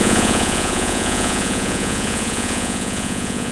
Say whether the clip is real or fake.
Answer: fake